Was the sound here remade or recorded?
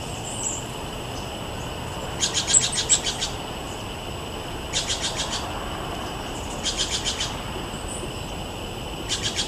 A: recorded